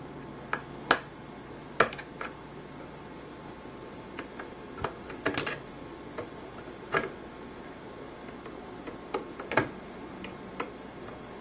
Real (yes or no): yes